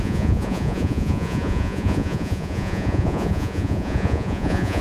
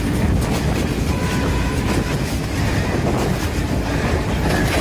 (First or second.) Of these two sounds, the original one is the second